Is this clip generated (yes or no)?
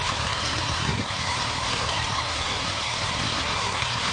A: yes